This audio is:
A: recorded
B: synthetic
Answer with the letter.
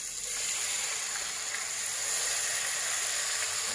A